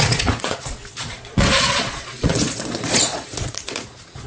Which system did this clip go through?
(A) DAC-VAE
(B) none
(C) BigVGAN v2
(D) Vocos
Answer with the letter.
D